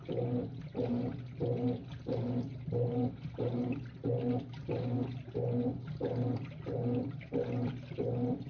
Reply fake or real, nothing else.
real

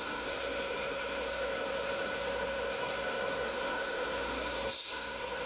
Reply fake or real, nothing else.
fake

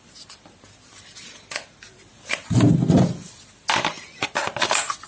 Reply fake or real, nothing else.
real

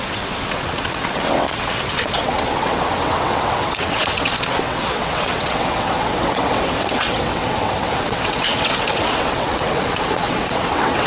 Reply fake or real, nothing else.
fake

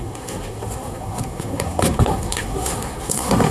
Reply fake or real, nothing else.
fake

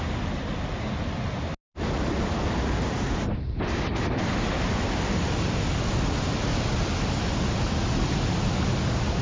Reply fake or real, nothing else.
real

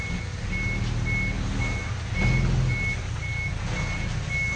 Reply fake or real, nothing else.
real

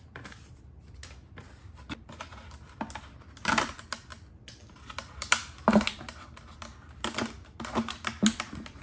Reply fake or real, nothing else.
real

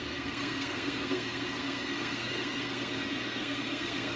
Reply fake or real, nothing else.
fake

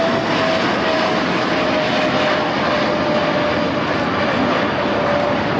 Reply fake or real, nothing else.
real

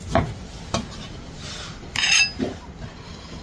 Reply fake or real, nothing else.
real